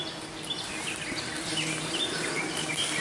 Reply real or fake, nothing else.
real